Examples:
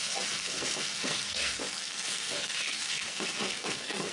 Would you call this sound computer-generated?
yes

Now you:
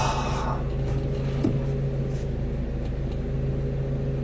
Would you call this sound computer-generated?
no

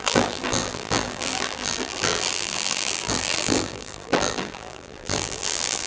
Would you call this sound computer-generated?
yes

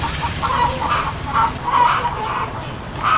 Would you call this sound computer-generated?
yes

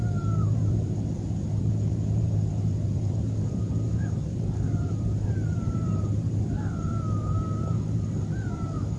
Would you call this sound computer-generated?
yes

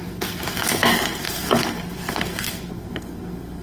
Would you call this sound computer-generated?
yes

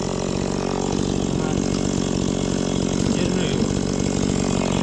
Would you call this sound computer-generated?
no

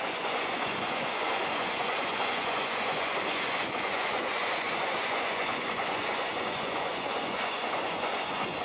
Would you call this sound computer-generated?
yes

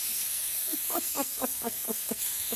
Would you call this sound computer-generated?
yes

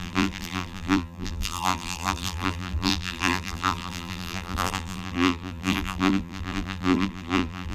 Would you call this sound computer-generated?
yes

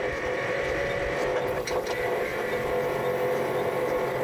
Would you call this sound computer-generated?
no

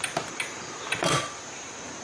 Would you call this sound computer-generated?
yes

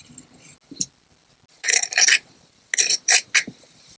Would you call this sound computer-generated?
no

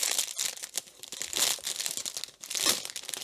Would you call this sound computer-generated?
no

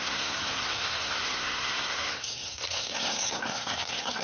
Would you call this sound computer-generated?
yes